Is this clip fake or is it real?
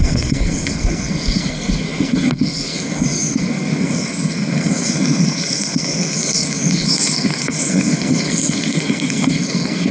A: fake